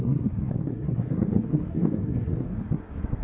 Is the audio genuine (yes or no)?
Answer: no